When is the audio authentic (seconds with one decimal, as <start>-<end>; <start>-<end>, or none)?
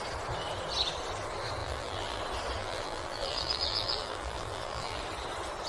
0.0-1.6; 2.2-2.6; 5.0-5.7